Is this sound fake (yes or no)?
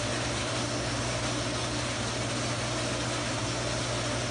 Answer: no